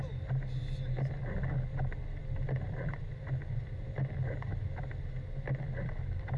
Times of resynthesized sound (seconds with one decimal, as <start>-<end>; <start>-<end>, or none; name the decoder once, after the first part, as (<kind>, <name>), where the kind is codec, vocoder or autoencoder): 2.2-3.0 (vocoder, BigVGAN v2)